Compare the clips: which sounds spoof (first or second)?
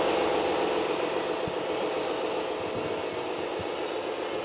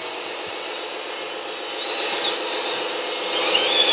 first